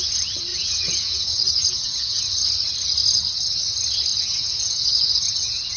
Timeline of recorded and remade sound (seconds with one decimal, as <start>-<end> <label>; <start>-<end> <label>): 0.0-0.5 recorded; 0.5-2.2 remade; 2.2-4.1 recorded; 4.1-5.1 remade; 5.1-5.8 recorded